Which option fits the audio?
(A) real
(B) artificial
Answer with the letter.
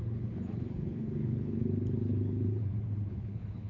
B